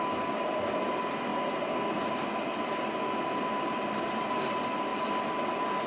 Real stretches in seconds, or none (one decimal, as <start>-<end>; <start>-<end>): 0.0-5.9